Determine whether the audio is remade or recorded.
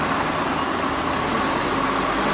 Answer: recorded